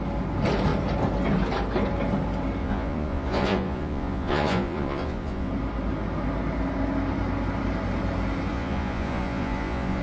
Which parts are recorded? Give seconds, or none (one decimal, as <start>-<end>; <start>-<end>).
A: 0.0-2.6; 5.5-8.5

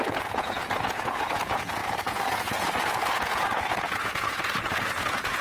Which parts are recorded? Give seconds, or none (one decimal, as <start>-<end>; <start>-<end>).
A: none

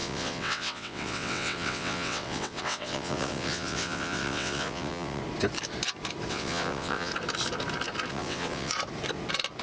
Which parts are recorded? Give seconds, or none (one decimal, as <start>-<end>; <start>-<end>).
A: 5.2-6.3; 7.1-8.1; 8.7-9.6

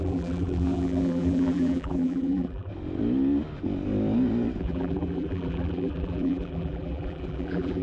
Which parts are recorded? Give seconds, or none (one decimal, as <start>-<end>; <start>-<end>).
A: 2.7-4.6

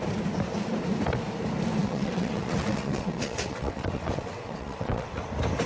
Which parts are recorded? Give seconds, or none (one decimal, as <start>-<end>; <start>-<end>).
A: 0.0-1.8; 5.2-5.7

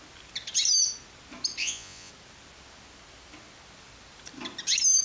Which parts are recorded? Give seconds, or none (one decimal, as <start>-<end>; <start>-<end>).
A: 0.0-1.6; 2.1-5.0

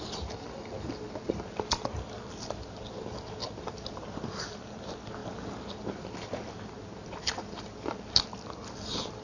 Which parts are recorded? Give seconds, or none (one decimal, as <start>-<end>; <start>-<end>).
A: 5.2-7.2